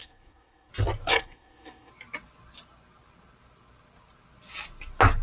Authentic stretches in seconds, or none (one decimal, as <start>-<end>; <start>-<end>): 0.7-1.1; 1.9-5.2